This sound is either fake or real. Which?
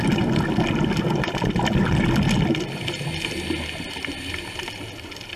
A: real